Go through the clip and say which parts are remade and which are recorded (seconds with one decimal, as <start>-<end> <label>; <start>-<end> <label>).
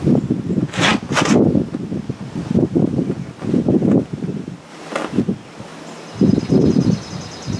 0.0-7.6 recorded